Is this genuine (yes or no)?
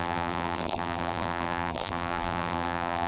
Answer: no